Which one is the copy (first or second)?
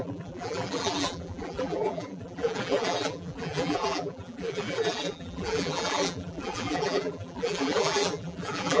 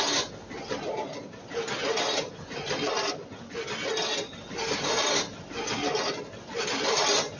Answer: first